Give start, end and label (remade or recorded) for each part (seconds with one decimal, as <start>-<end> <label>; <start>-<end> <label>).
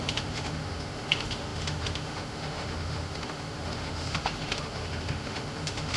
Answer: 0.0-6.0 remade